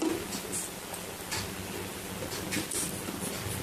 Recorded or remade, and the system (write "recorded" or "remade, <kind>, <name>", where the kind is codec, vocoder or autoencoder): recorded